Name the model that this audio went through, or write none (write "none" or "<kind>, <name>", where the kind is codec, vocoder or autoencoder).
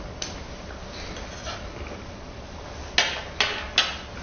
none